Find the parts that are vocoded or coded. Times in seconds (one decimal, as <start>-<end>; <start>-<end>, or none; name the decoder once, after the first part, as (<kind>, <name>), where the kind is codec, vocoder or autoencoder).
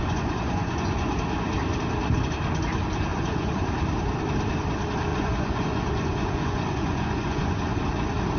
0.0-1.1 (vocoder, Vocos); 3.1-3.6; 5.1-7.8